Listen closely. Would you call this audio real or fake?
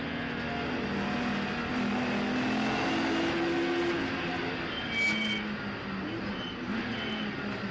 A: real